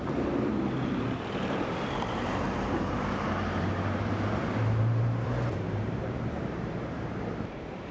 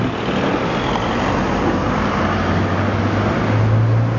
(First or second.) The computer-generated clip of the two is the first